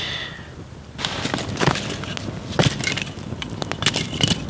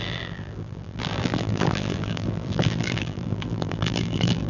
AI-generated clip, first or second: second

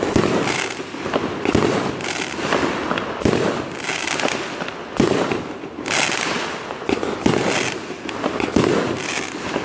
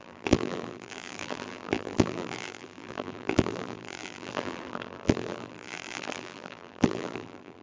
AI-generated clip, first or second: second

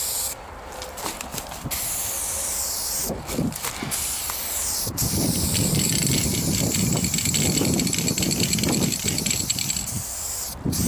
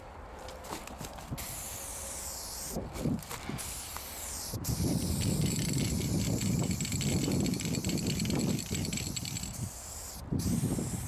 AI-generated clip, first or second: first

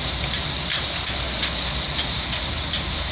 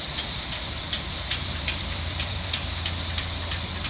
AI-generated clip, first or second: second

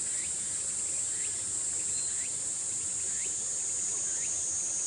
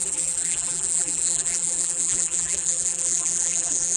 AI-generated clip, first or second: second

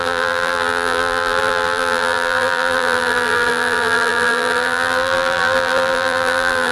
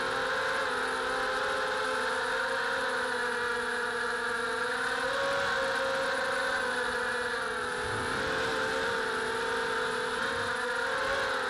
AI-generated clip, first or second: first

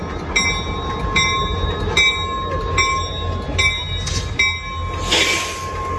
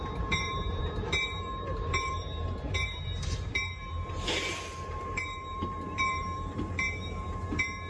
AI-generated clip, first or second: second